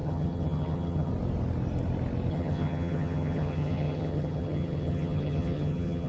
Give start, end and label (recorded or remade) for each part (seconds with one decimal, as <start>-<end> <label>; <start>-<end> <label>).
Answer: 0.0-1.1 remade; 1.1-2.3 recorded; 2.3-6.1 remade

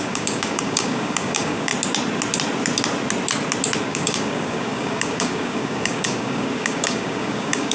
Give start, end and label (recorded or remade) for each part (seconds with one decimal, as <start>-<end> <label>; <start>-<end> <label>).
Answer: 0.0-1.7 remade; 1.7-3.8 recorded; 3.8-7.7 remade

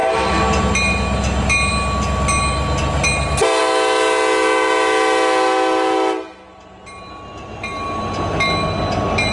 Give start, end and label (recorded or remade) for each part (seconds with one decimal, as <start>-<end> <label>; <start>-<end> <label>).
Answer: 0.0-9.3 recorded